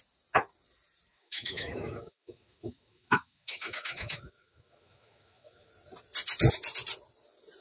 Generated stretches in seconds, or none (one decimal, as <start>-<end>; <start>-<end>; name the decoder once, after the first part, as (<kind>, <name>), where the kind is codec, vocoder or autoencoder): 1.1-5.7 (autoencoder, DAC-VAE)